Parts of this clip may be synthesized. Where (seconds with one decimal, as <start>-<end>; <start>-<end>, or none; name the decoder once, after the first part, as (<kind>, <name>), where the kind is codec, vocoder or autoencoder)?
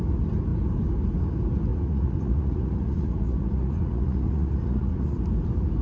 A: 1.7-5.2 (vocoder, Vocos)